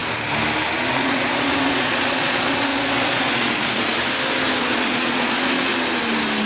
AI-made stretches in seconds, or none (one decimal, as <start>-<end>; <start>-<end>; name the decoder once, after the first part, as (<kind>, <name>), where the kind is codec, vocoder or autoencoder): 0.9-3.9 (vocoder, Vocos); 4.6-5.7